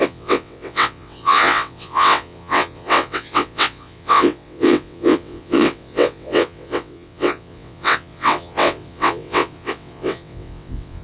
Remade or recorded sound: remade